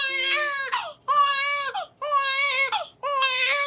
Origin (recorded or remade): recorded